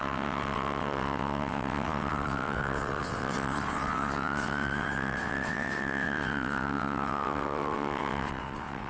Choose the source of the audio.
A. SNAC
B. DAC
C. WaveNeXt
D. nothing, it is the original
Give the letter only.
C